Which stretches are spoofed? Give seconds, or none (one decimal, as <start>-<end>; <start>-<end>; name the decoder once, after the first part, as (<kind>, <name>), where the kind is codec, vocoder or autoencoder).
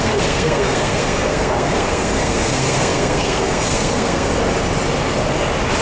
0.0-4.3 (codec, SNAC)